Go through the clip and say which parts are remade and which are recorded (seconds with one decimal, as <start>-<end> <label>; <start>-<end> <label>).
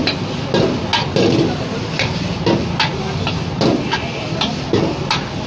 0.0-5.5 recorded